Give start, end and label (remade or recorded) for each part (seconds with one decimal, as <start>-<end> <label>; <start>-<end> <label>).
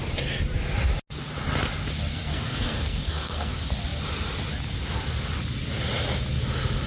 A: 0.0-2.1 recorded; 2.1-3.5 remade; 3.5-6.9 recorded